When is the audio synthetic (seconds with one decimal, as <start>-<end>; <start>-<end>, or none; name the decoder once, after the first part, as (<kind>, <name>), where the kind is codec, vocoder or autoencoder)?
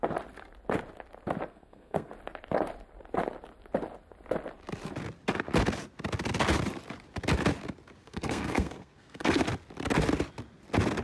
1.5-2.1 (codec, SNAC); 8.0-9.4